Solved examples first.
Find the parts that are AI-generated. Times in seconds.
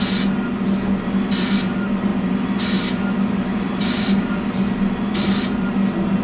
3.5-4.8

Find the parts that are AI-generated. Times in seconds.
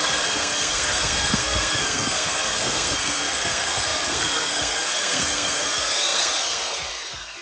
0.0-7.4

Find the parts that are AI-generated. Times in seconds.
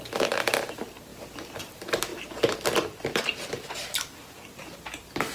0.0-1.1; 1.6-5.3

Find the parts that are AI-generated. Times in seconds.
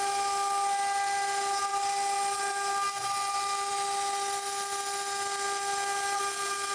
none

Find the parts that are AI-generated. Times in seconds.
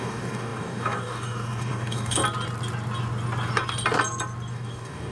0.0-2.2; 4.5-5.1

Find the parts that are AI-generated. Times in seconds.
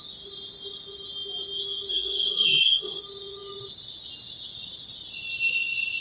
1.9-3.0